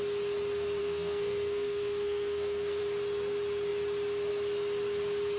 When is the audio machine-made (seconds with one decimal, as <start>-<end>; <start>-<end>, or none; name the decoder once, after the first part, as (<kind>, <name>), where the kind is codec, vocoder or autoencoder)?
0.8-2.8 (codec, SNAC)